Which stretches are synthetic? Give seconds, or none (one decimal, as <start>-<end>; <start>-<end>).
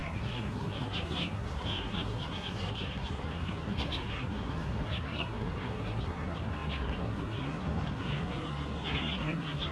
0.0-9.7